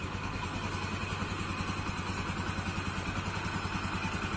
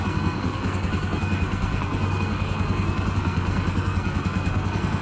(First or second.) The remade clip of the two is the second